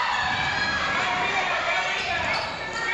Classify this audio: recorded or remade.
recorded